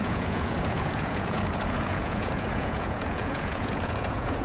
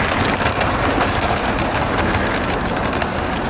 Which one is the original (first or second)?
second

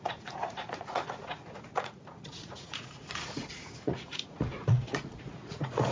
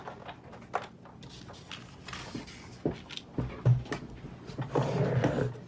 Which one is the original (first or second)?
second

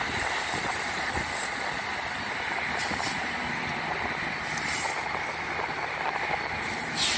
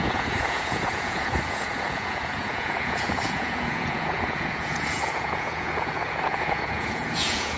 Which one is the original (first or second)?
first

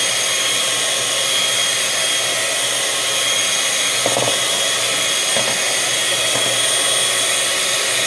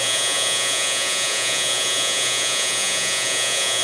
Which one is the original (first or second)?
first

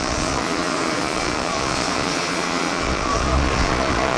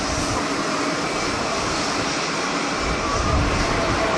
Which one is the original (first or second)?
second